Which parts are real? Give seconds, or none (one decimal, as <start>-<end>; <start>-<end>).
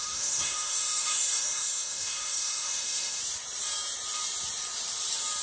3.2-5.4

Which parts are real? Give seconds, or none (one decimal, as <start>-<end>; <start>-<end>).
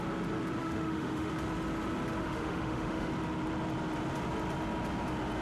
0.0-0.6; 1.3-2.2; 3.1-5.4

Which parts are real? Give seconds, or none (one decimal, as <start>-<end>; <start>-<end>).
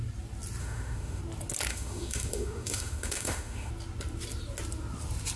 0.0-0.6; 1.2-1.7; 3.7-5.4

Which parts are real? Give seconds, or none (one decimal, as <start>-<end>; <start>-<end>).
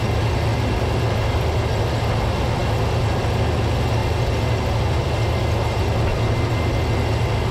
0.0-7.5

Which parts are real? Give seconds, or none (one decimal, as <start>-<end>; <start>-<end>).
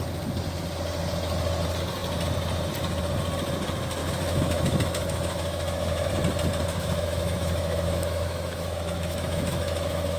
0.0-4.0; 6.1-6.7